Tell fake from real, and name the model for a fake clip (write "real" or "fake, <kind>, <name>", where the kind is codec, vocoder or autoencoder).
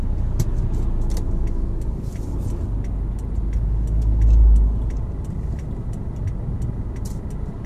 real